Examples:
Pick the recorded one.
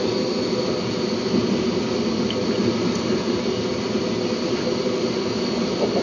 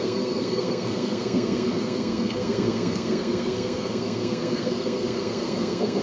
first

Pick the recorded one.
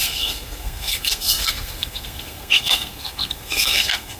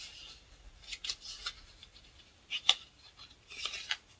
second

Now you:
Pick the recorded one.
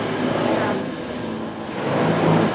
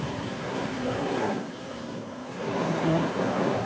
first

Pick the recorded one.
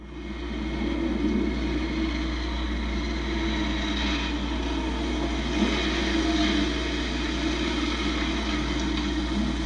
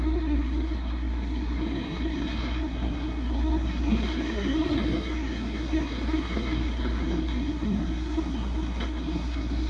first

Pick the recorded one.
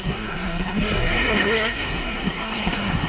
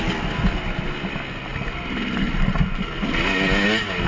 second